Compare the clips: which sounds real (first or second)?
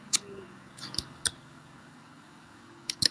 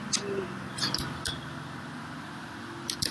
second